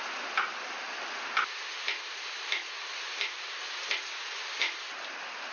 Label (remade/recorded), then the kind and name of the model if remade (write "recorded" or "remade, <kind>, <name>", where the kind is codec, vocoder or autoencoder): recorded